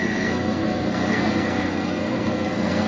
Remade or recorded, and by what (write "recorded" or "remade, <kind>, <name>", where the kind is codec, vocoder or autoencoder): remade, codec, SNAC